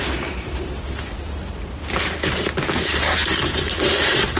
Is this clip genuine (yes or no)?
yes